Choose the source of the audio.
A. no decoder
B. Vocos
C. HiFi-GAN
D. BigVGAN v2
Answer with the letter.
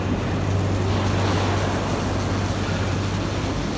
A